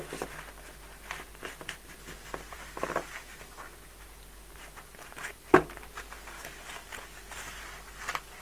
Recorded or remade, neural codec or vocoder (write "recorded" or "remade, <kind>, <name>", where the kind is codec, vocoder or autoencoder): recorded